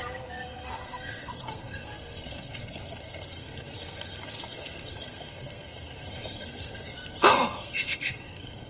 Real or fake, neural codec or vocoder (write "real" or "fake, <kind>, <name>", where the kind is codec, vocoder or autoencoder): fake, codec, SNAC